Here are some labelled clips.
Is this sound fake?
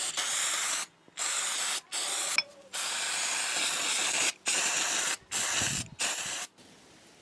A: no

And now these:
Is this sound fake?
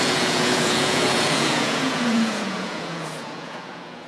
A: yes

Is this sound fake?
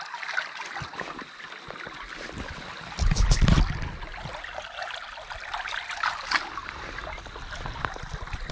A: no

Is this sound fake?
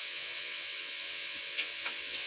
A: yes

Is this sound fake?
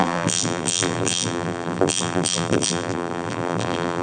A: yes